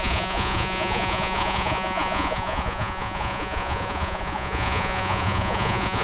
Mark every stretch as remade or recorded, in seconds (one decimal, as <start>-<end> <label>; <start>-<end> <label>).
0.0-6.0 remade